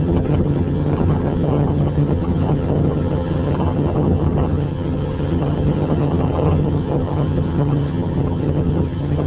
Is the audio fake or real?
fake